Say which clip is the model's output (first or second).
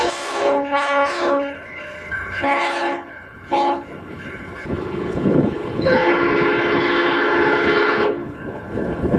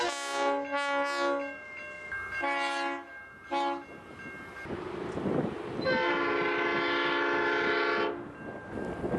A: first